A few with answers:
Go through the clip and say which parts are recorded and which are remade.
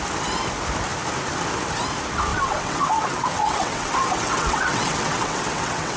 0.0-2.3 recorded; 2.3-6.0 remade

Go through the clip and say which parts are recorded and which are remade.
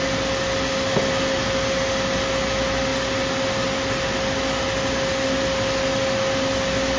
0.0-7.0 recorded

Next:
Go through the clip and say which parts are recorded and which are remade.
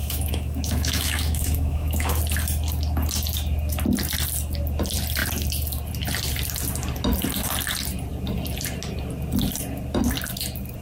0.0-2.2 remade; 2.2-10.8 recorded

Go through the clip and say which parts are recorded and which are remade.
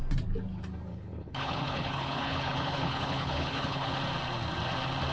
0.0-0.9 recorded; 0.9-3.9 remade; 3.9-5.1 recorded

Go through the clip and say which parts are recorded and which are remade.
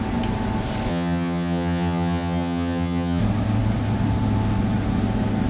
0.0-0.9 recorded; 0.9-3.2 remade; 3.2-5.5 recorded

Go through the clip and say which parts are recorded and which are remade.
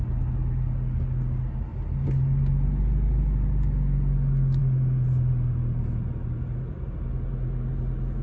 0.0-6.2 recorded; 6.2-6.9 remade; 6.9-8.2 recorded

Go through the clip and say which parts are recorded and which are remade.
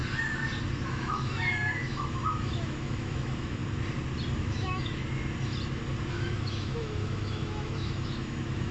0.0-1.0 recorded; 1.0-3.6 remade; 3.6-4.4 recorded; 4.4-5.0 remade; 5.0-6.1 recorded; 6.1-8.7 remade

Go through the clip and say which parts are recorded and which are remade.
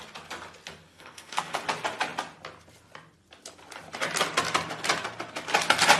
0.0-0.9 recorded; 0.9-1.6 remade; 1.6-6.0 recorded